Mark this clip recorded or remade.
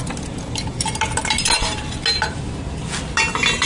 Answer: recorded